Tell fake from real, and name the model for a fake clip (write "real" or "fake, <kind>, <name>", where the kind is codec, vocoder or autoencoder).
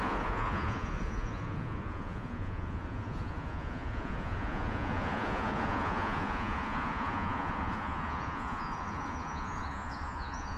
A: fake, vocoder, Vocos